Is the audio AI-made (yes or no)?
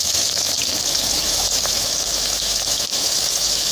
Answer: yes